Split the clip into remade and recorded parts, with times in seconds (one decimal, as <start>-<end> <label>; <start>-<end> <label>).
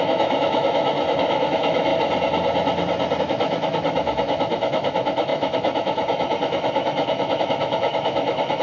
0.0-1.9 remade; 1.9-3.2 recorded; 3.2-8.6 remade